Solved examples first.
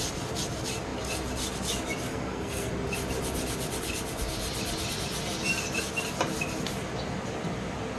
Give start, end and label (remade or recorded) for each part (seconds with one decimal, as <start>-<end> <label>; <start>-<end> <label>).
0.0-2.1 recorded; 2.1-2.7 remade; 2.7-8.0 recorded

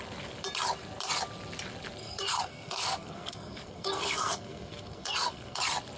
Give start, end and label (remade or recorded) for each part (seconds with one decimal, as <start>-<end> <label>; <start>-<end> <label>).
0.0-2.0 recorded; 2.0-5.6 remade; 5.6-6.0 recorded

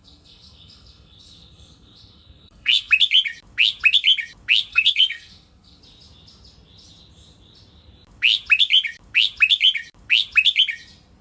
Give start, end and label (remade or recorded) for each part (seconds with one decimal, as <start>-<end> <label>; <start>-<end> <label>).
0.0-2.9 remade; 2.9-4.7 recorded; 4.7-5.8 remade; 5.8-11.2 recorded